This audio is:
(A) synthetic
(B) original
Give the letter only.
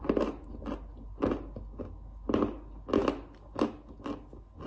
B